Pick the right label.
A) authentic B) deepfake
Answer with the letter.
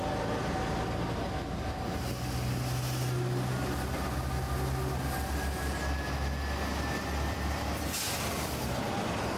A